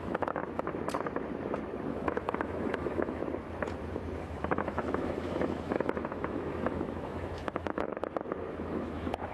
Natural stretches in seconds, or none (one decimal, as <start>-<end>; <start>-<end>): 0.4-1.9; 3.2-4.2; 7.9-8.5